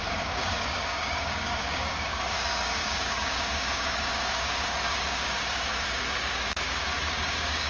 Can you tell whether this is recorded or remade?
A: remade